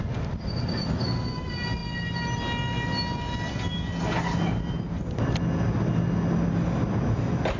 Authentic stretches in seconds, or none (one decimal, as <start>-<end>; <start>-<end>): 0.0-7.6